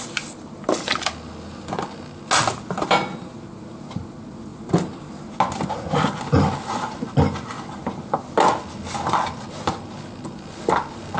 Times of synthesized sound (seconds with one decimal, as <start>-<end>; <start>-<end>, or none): none